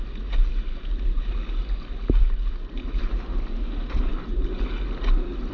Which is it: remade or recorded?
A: recorded